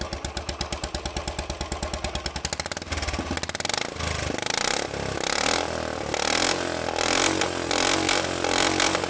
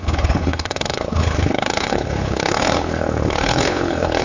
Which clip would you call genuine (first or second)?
first